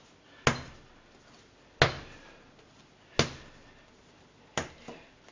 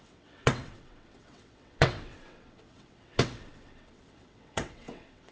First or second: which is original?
first